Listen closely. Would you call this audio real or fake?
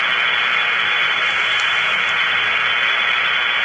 real